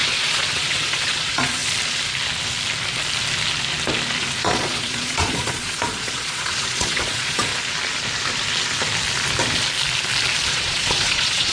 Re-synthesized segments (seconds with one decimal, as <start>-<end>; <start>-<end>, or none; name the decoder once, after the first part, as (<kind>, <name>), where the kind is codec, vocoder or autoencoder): 0.0-1.6 (vocoder, Vocos); 4.4-7.5; 10.5-11.5